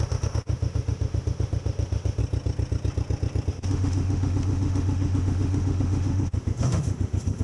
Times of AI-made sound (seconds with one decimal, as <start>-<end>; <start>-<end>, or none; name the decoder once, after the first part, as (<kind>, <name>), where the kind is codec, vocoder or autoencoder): 0.0-2.2 (autoencoder, DAC-VAE); 3.5-7.4

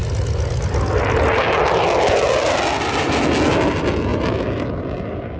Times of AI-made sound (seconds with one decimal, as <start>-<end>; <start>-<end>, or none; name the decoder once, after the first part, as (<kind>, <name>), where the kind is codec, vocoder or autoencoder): none

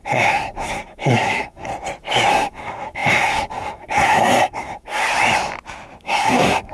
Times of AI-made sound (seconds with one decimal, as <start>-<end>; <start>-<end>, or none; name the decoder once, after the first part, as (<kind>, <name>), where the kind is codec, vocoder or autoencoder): 0.0-1.7 (codec, SNAC); 2.3-5.0; 6.0-6.7

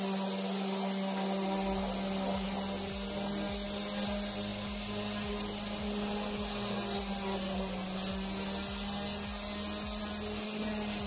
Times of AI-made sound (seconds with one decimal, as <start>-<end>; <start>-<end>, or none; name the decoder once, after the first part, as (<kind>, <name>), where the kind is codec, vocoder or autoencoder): none